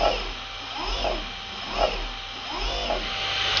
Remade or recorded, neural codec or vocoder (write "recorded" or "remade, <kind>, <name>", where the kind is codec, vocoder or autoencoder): recorded